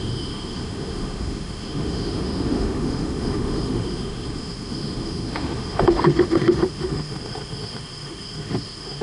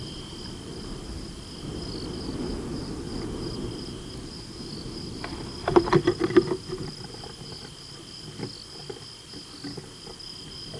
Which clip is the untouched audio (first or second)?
second